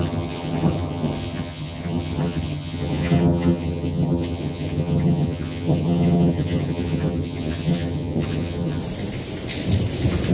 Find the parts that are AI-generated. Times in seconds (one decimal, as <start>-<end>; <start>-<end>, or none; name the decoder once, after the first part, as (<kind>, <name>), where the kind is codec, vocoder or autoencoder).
0.0-8.8 (vocoder, HiFi-GAN)